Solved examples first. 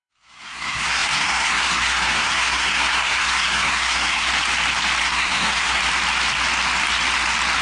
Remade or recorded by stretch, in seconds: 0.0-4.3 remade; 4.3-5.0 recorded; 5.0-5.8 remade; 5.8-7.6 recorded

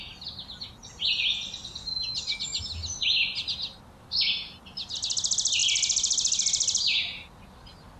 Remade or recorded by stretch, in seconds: 0.0-8.0 recorded

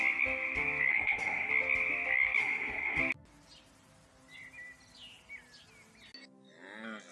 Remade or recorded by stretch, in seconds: 0.0-0.9 recorded; 0.9-1.5 remade; 1.5-2.4 recorded; 2.4-3.0 remade; 3.0-7.1 recorded

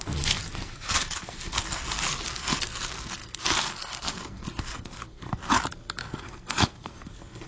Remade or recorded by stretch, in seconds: 0.0-5.4 remade; 5.4-6.0 recorded; 6.0-7.5 remade

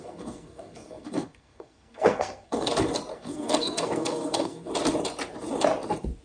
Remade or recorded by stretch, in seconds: 0.0-2.7 remade; 2.7-3.1 recorded; 3.1-4.7 remade; 4.7-6.2 recorded

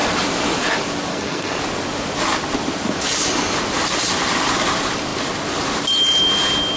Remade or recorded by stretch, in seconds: 0.0-1.1 recorded; 1.1-1.6 remade; 1.6-6.8 recorded

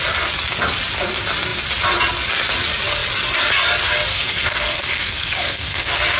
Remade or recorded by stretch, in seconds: 0.0-4.1 recorded; 4.1-6.2 remade